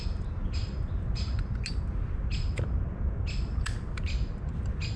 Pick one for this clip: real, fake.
real